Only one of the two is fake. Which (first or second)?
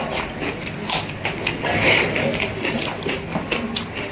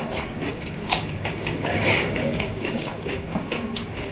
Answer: second